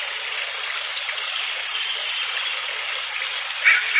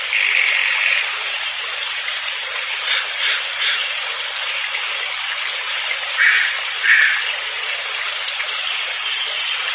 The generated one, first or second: second